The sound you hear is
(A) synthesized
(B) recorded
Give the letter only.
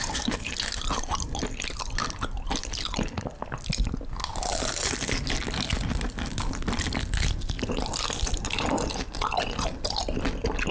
B